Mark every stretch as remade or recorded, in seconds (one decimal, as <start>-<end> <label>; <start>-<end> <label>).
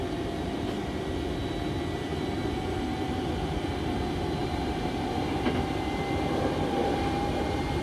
0.0-4.4 recorded; 4.4-7.8 remade